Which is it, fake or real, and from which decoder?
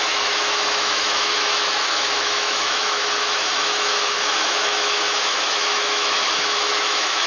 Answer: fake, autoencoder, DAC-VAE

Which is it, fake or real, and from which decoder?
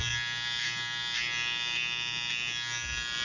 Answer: real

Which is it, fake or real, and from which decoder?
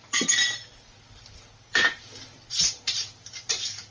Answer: real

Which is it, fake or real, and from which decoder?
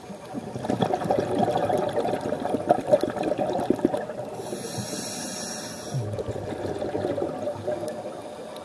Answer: real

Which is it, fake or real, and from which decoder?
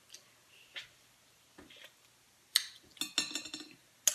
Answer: real